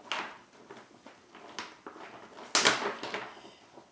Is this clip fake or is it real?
real